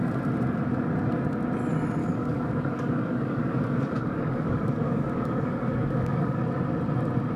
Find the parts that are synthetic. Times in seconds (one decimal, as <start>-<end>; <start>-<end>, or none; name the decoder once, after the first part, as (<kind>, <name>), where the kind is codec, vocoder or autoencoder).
2.0-6.4 (codec, DAC)

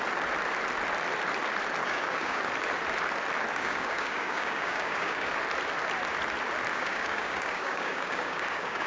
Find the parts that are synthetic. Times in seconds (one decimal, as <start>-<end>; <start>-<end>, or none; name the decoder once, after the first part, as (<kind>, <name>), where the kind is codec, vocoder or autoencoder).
1.8-2.4 (codec, DAC); 3.5-5.3; 6.7-8.9

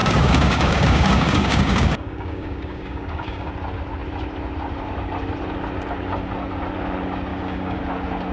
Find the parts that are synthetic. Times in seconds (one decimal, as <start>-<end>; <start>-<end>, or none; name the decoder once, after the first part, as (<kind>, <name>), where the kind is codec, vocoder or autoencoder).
0.0-3.5 (codec, DAC); 7.3-7.8

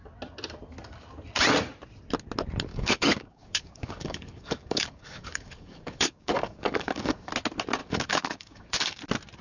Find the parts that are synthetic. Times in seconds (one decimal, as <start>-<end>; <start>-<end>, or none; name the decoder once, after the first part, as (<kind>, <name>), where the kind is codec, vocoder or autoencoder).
2.7-7.3 (codec, DAC); 7.8-9.0

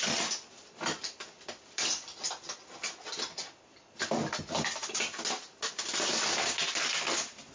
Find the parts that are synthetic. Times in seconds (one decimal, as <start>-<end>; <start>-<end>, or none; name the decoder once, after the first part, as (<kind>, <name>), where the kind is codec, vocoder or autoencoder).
none

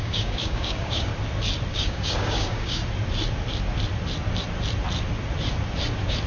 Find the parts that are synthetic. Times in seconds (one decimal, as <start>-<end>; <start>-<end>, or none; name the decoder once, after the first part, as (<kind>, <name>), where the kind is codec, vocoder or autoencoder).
0.0-1.1 (codec, DAC); 1.7-2.8

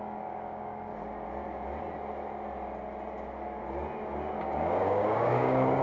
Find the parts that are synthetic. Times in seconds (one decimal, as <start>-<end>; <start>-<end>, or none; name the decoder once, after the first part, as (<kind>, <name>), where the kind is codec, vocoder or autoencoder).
0.0-0.9 (codec, DAC); 4.4-5.8